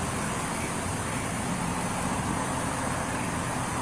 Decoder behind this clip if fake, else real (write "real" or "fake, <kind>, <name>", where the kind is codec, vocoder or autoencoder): real